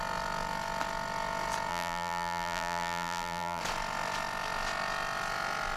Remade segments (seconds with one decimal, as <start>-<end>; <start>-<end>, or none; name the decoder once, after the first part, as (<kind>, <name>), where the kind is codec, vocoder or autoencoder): 1.7-3.6 (vocoder, BigVGAN v2)